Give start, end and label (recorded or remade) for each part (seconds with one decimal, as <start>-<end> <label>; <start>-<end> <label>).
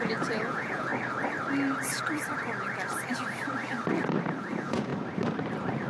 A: 0.0-0.9 remade; 0.9-4.4 recorded; 4.4-4.9 remade; 4.9-5.9 recorded